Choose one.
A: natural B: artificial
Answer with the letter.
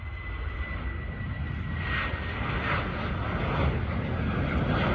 A